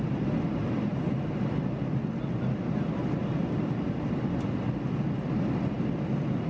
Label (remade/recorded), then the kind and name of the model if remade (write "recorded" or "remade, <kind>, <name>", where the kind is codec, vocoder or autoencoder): recorded